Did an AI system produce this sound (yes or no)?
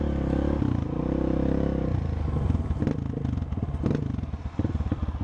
no